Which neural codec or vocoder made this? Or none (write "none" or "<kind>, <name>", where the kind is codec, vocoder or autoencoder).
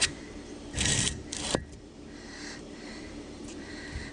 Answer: vocoder, BigVGAN v2